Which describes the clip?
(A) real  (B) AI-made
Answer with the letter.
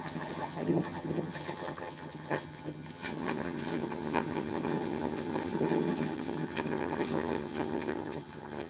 B